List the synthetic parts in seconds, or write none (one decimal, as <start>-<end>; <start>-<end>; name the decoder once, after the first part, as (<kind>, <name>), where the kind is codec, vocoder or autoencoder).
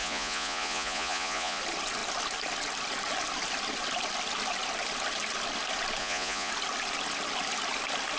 0.0-1.6 (vocoder, Vocos); 6.0-6.5